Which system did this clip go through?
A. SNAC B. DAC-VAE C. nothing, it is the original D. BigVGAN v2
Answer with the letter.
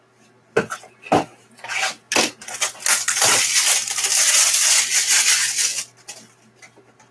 C